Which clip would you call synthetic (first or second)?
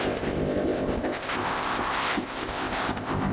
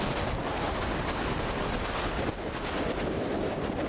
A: first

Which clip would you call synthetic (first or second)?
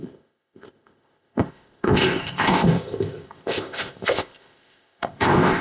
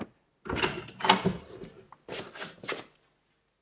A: first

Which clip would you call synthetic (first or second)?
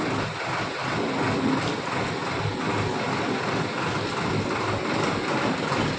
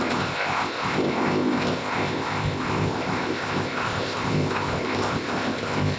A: second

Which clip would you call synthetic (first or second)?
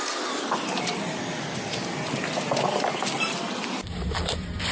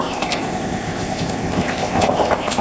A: second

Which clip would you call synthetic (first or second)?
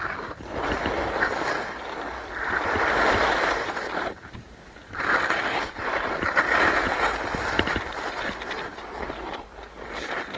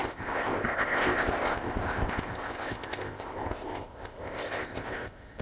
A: second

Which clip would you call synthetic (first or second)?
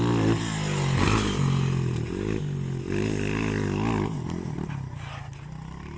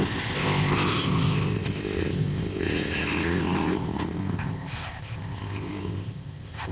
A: second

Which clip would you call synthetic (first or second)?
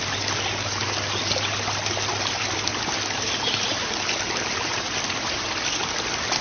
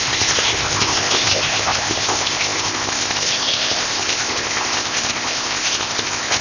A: second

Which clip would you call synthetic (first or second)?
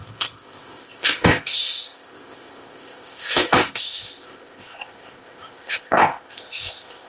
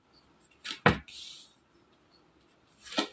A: first